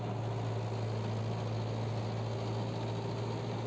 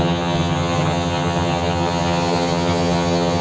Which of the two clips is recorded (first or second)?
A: first